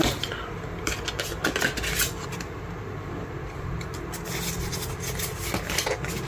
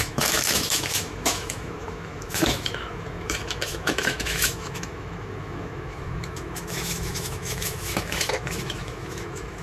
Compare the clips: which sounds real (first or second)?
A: first